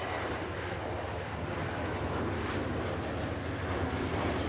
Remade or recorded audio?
recorded